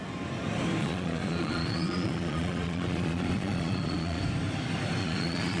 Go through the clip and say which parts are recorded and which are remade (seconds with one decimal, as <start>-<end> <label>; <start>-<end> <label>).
0.0-0.8 recorded; 0.8-4.2 remade; 4.2-5.0 recorded; 5.0-5.6 remade